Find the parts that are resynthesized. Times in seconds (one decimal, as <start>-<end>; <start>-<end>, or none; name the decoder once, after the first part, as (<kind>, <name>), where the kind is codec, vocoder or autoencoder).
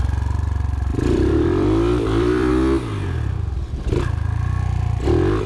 0.9-2.5 (vocoder, BigVGAN v2)